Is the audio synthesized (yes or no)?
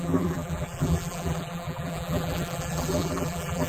yes